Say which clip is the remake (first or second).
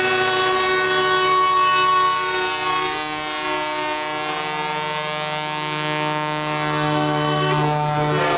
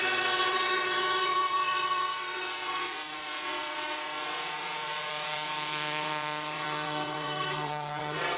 second